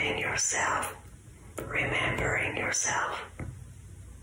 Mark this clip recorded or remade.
recorded